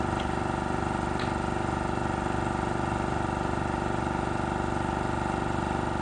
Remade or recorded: recorded